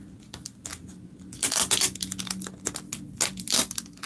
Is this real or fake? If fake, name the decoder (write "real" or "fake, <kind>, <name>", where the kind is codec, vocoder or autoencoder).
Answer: real